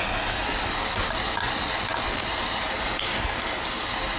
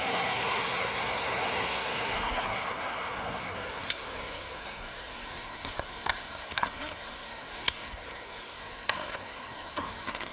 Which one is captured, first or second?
first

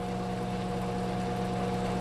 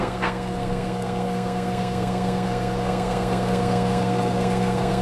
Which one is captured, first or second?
first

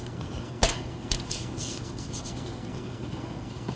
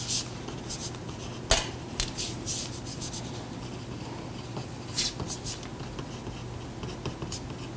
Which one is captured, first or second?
second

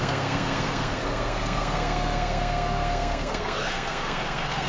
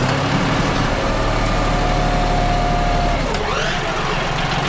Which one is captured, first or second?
second